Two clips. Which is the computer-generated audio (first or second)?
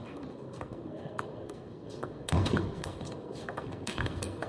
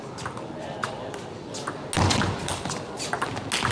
first